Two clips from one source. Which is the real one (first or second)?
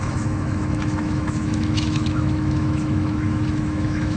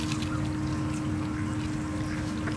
second